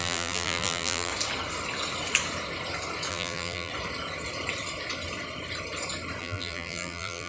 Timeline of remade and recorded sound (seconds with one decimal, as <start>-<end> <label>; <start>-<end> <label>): 0.0-1.1 remade; 1.1-3.1 recorded; 3.1-3.7 remade; 3.7-6.2 recorded; 6.2-7.3 remade